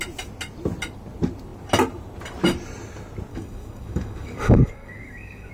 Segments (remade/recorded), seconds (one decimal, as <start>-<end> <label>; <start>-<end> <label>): 0.0-3.3 recorded; 3.3-5.5 remade